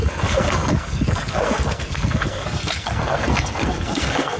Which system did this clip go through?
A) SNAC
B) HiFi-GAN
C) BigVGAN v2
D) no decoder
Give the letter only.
A